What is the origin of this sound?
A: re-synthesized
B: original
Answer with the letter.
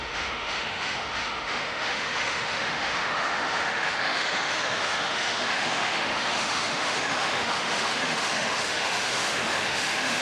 A